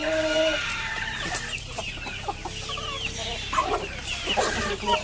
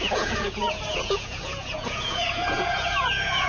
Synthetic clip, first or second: second